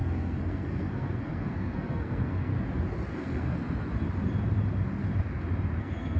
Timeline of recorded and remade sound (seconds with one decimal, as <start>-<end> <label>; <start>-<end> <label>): 0.0-2.5 remade; 2.5-3.1 recorded; 3.1-3.6 remade; 3.6-5.8 recorded; 5.8-6.2 remade